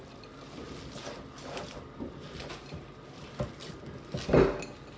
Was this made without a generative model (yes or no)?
yes